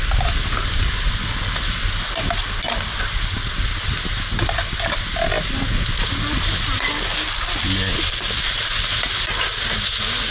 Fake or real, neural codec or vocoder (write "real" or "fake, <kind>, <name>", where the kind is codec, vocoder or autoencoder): real